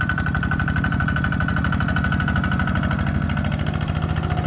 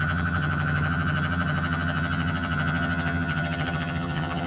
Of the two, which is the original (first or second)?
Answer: first